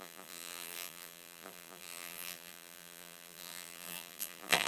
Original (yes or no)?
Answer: no